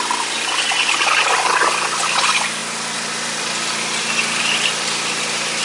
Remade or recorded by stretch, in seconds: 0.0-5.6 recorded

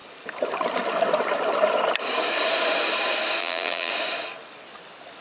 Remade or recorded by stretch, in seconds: 0.0-3.4 recorded; 3.4-3.9 remade; 3.9-5.2 recorded

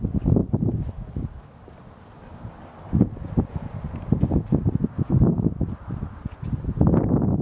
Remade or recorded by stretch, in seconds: 0.0-7.4 recorded